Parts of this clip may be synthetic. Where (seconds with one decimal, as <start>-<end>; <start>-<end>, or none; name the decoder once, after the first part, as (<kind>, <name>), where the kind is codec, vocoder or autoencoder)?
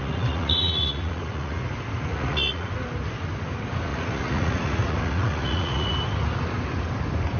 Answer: 0.0-1.7 (vocoder, Vocos); 2.1-2.7; 3.9-5.9